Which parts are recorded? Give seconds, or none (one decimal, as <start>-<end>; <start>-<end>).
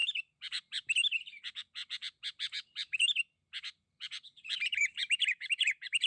none